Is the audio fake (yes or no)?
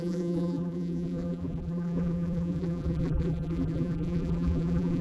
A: yes